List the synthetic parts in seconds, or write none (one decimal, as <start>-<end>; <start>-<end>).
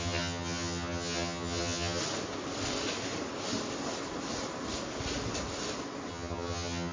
0.0-2.0; 6.1-6.9